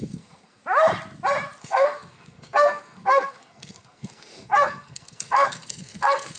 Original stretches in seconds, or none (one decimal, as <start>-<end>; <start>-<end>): 0.6-1.6